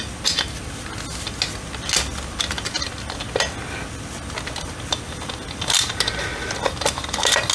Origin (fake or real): real